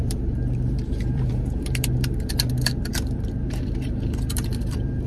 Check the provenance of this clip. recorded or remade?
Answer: remade